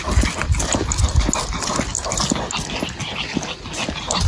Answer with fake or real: real